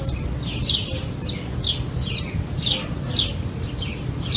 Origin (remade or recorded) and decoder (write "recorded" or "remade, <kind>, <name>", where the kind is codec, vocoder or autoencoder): recorded